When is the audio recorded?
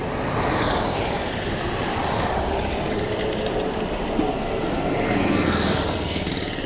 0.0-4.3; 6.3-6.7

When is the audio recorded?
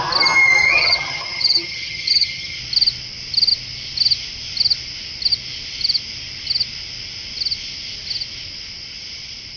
0.0-0.6; 2.6-9.6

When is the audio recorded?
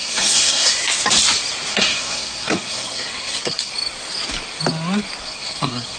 0.8-1.7; 3.7-5.2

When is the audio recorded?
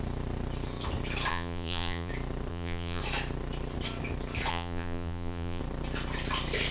0.0-1.3; 2.1-2.5; 3.0-4.5; 5.6-6.7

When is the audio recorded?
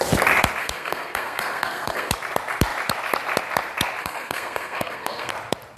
0.0-0.6; 2.1-4.0; 5.3-5.8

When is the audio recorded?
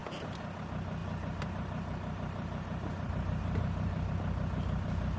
0.0-1.0; 4.1-5.2